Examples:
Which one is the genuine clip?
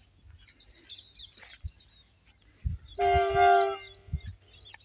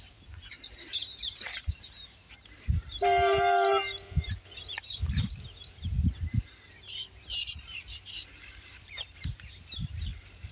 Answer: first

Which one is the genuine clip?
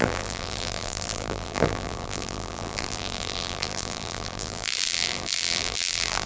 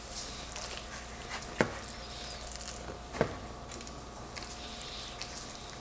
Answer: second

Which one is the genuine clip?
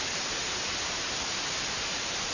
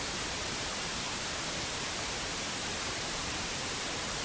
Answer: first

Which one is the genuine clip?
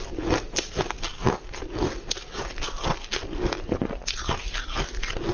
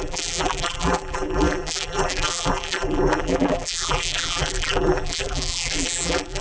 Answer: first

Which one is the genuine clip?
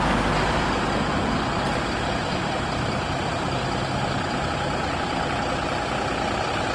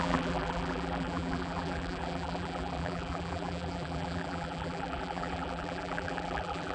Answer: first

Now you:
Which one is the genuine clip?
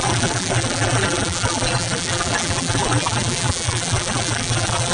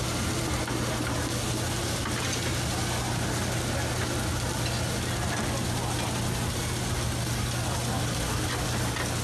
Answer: second